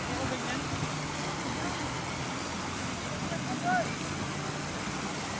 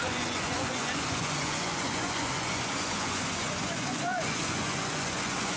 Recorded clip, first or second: first